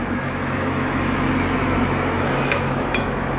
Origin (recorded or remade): remade